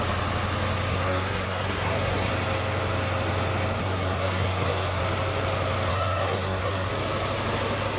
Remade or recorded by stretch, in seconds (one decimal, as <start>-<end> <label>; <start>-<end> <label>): 0.0-0.9 recorded; 0.9-2.3 remade; 2.3-3.8 recorded; 3.8-5.0 remade; 5.0-5.9 recorded; 5.9-6.9 remade; 6.9-8.0 recorded